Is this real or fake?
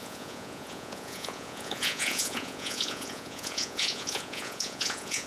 fake